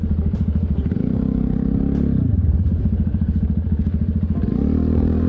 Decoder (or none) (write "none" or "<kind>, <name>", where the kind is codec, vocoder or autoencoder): vocoder, BigVGAN v2